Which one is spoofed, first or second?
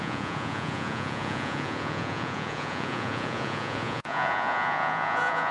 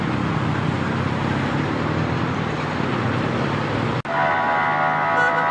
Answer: first